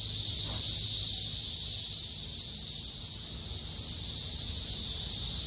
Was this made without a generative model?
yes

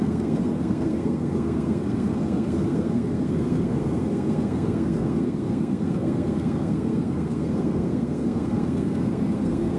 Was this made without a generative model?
no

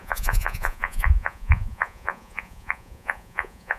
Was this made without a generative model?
no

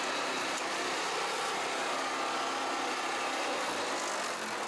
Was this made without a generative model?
yes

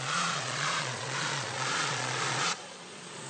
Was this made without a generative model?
no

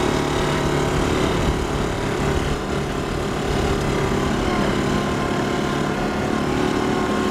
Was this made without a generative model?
yes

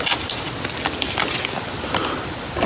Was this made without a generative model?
yes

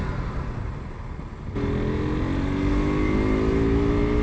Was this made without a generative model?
yes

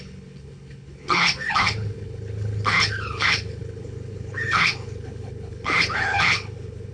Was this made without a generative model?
no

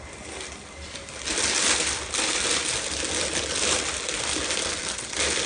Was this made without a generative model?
yes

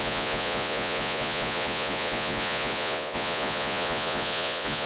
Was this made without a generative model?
no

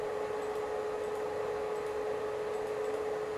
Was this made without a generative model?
yes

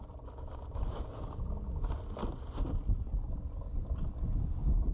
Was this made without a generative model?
yes